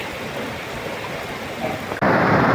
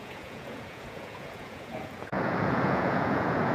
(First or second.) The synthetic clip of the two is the second